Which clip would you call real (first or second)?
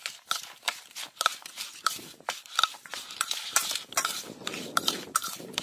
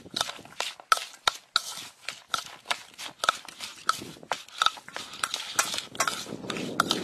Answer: second